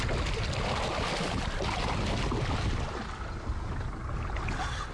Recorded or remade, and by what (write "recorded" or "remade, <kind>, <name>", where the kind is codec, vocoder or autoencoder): recorded